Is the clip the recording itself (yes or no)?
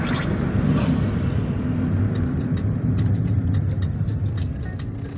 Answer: yes